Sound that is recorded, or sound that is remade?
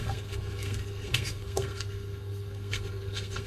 remade